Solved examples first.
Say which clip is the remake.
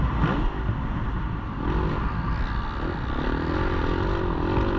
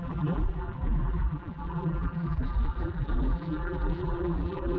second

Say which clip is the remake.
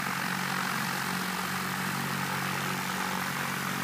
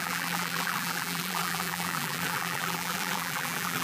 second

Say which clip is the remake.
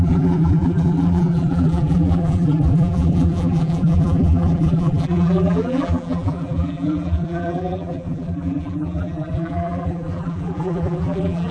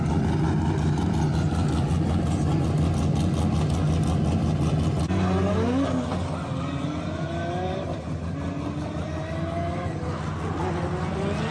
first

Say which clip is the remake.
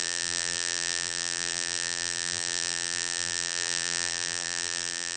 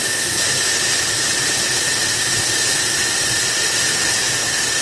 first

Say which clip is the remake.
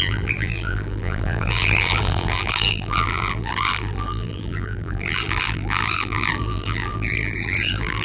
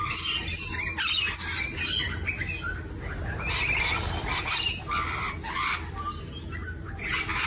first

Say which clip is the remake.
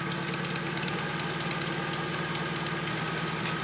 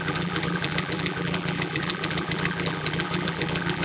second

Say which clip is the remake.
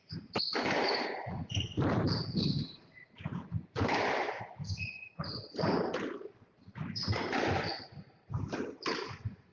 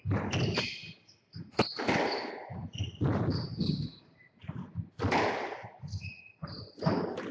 first